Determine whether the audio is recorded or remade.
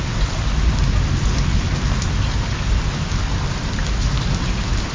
recorded